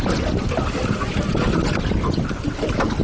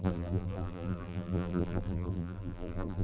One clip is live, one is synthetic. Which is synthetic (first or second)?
second